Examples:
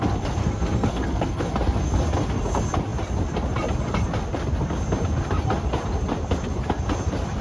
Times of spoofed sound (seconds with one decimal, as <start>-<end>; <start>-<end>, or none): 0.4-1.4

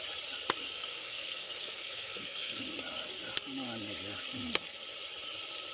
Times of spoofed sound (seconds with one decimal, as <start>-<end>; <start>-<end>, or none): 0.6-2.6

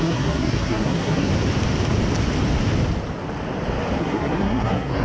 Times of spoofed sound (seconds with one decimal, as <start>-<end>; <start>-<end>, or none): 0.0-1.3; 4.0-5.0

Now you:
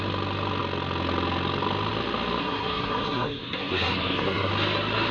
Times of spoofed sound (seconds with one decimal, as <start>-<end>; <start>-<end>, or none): 2.4-4.5

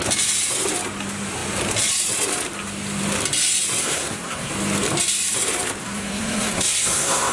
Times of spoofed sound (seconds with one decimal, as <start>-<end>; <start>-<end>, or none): 3.8-4.5; 5.8-7.3

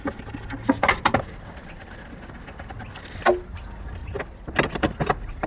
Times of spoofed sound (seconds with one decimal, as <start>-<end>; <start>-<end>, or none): none